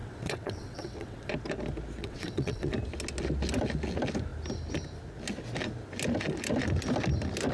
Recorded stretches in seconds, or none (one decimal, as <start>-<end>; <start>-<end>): 1.3-2.0; 2.7-7.5